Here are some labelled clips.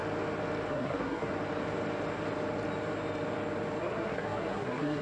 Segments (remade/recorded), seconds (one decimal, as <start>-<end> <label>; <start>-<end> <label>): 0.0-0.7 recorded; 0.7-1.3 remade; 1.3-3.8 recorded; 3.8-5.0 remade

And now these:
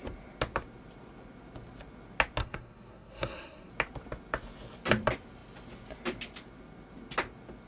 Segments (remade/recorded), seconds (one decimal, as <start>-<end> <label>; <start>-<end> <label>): 0.0-2.4 recorded; 2.4-3.7 remade; 3.7-7.7 recorded

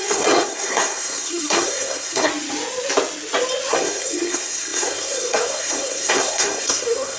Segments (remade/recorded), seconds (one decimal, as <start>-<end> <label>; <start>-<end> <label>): 0.0-2.3 remade; 2.3-3.7 recorded; 3.7-7.2 remade

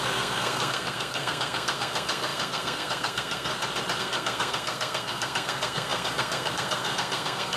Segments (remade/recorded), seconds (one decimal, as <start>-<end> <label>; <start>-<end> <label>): 0.0-3.5 remade; 3.5-4.0 recorded; 4.0-7.6 remade

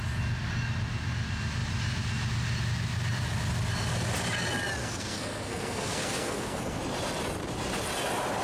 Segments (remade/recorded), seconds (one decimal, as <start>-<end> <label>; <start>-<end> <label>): 0.0-4.8 recorded; 4.8-6.8 remade; 6.8-8.4 recorded

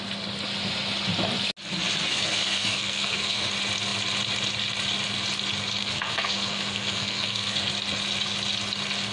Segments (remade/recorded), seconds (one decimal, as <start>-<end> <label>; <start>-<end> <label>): 0.0-2.1 recorded; 2.1-3.5 remade; 3.5-5.8 recorded; 5.8-7.7 remade; 7.7-9.1 recorded

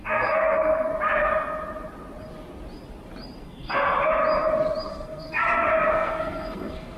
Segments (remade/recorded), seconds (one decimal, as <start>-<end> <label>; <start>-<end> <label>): 0.0-0.9 remade; 0.9-3.4 recorded; 3.4-3.8 remade; 3.8-4.9 recorded; 4.9-5.4 remade; 5.4-5.9 recorded; 5.9-7.0 remade